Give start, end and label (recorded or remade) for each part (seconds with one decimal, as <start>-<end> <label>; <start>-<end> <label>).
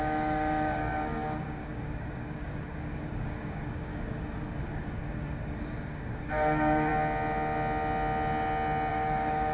0.0-3.9 remade; 3.9-4.6 recorded; 4.6-6.9 remade; 6.9-8.9 recorded; 8.9-9.5 remade